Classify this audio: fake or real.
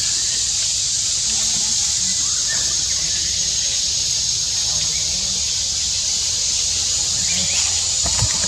real